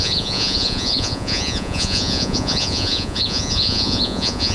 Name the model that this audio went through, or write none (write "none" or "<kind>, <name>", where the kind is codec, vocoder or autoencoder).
vocoder, Vocos